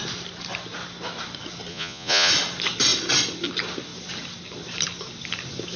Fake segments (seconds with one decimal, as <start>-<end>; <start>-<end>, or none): 1.7-2.3